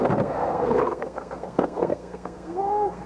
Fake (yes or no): yes